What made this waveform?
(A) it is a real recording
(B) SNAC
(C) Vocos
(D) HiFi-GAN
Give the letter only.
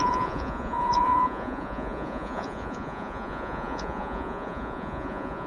C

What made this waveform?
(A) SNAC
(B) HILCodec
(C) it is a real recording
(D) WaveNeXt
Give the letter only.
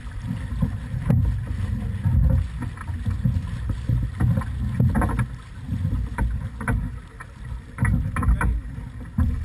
C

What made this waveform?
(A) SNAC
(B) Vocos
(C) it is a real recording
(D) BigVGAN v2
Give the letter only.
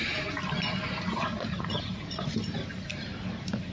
C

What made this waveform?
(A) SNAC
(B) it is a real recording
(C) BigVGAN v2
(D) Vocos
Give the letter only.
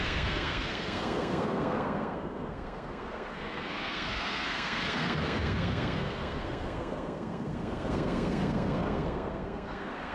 A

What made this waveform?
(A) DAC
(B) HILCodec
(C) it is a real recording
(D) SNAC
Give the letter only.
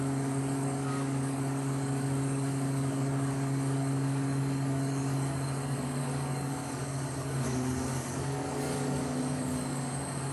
A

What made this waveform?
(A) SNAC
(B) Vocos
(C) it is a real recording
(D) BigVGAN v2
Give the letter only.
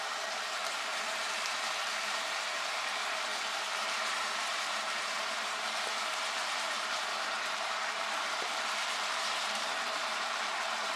D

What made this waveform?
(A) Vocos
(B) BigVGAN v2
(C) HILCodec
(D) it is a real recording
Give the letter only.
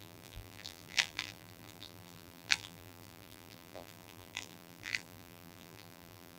B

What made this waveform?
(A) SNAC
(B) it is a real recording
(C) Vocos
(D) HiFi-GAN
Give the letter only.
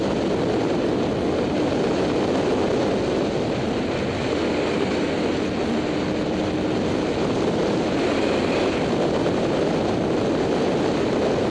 B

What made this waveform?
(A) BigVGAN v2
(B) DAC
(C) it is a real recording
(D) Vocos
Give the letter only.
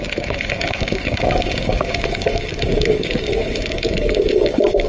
B